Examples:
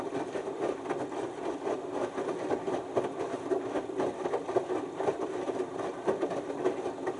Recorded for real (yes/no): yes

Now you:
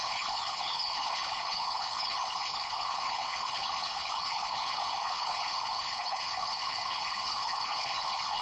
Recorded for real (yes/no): no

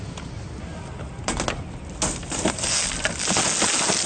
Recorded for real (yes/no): yes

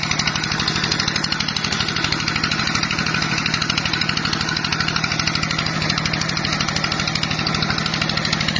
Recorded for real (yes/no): yes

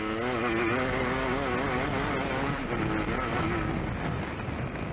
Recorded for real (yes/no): yes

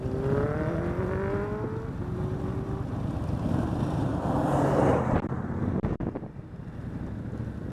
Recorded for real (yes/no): yes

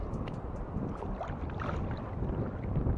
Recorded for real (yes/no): yes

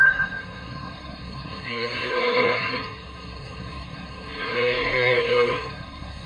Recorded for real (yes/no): no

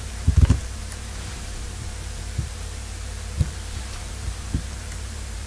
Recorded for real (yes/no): no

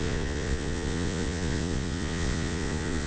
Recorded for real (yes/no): no